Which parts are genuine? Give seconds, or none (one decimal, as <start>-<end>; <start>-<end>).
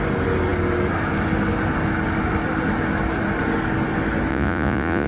0.0-4.3